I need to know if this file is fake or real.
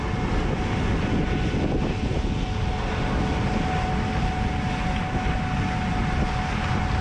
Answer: real